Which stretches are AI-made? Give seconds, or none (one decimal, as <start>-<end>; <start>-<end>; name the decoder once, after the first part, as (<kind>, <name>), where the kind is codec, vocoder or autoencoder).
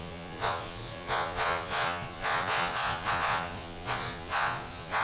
0.0-5.0 (vocoder, Vocos)